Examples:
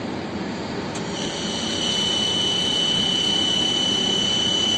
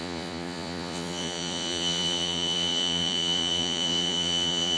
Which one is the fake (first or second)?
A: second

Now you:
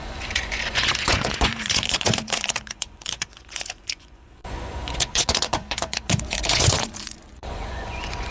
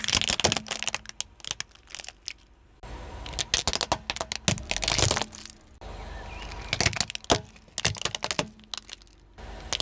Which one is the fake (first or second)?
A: first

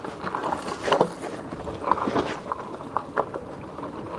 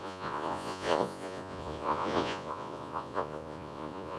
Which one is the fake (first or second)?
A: second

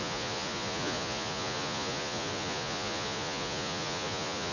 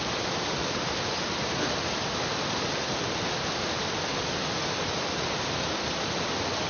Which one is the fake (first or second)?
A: first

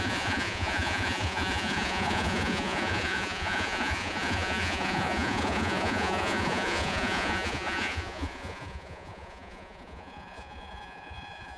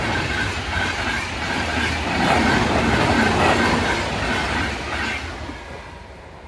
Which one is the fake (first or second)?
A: first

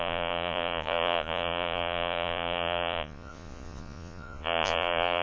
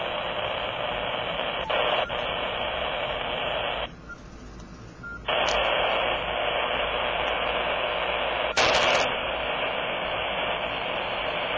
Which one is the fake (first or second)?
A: first